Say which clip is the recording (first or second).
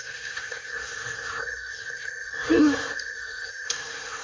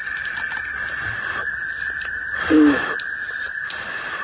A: second